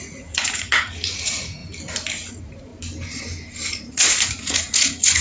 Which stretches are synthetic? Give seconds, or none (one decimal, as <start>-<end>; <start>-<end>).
0.0-1.6; 2.3-2.7; 3.7-5.2